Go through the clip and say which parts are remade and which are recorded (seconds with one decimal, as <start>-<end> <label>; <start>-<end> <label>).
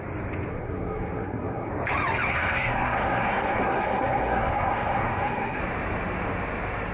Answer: 0.0-0.5 recorded; 0.5-1.7 remade; 1.7-2.3 recorded; 2.3-5.6 remade; 5.6-6.9 recorded